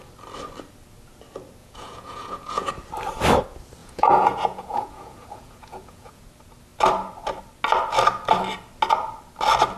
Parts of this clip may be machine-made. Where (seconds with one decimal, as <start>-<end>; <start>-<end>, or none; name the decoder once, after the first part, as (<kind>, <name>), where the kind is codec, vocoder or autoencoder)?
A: 1.6-2.7 (vocoder, Vocos); 3.8-6.2